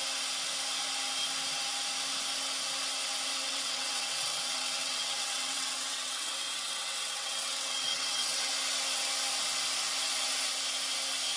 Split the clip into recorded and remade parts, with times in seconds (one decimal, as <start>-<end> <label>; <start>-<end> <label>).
0.0-3.4 recorded; 3.4-8.5 remade; 8.5-11.4 recorded